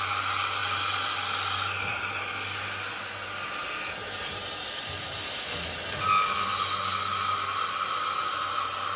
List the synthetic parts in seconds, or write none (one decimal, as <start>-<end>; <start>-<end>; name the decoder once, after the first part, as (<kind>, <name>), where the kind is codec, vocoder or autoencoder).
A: none